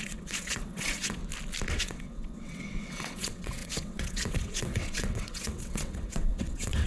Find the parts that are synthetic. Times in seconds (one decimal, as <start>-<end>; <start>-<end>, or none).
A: 0.0-1.2; 1.7-6.9

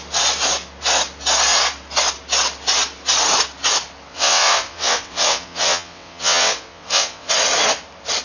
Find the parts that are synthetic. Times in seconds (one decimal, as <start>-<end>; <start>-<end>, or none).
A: 4.1-7.3

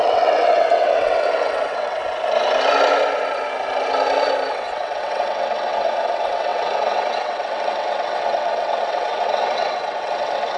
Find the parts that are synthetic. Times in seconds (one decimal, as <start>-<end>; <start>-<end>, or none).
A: 0.0-2.0; 4.5-10.6

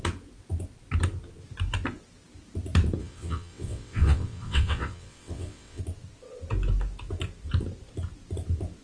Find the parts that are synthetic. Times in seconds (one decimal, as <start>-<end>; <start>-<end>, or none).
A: 3.0-5.8

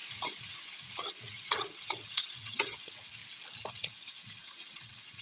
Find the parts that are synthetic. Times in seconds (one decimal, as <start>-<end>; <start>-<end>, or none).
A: 0.0-3.2; 3.7-5.2

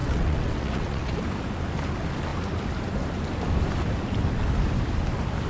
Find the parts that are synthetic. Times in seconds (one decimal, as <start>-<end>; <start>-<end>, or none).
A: 0.0-1.1

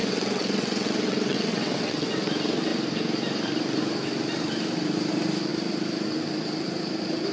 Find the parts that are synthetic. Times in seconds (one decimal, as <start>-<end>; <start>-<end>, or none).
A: 0.0-2.1

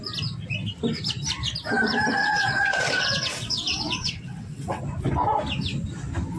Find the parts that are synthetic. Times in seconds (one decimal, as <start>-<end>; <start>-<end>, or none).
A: 2.2-4.8